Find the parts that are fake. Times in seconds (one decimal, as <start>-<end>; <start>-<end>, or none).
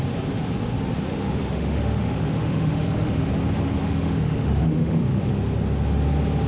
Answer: 1.1-3.3; 3.8-5.3